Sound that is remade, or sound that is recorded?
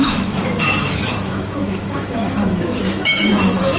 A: remade